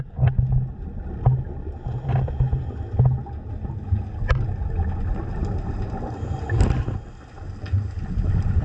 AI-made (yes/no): no